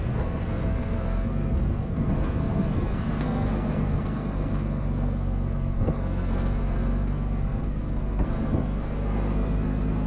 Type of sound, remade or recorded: remade